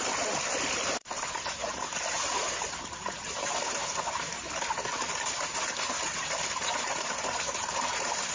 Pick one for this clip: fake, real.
real